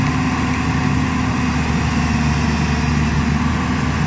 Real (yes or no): yes